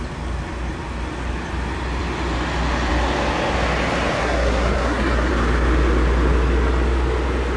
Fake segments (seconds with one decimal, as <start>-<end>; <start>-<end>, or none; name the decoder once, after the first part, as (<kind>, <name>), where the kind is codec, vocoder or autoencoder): 4.2-5.3 (codec, SNAC)